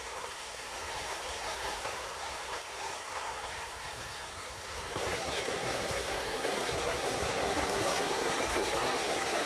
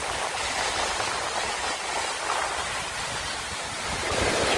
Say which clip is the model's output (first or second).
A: first